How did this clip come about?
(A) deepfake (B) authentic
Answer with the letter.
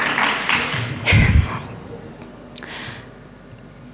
B